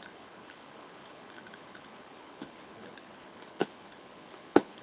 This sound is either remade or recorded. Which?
remade